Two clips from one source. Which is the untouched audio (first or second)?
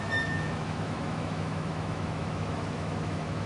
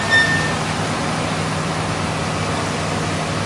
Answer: second